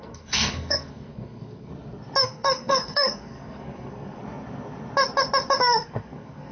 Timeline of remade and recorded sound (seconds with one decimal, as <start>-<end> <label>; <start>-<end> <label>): 0.0-1.7 remade; 1.7-2.2 recorded; 2.2-4.2 remade; 4.2-5.6 recorded; 5.6-6.5 remade